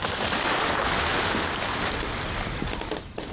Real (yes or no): yes